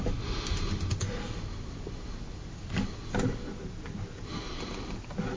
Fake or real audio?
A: real